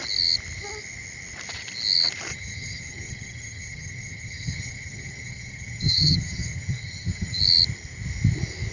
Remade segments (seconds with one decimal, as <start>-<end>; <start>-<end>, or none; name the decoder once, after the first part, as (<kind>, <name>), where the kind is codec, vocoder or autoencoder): 2.3-7.4 (vocoder, HiFi-GAN)